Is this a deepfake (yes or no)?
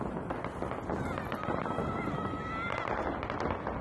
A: no